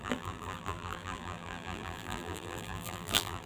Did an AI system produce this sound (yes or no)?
yes